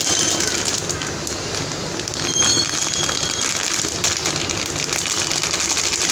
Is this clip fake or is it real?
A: real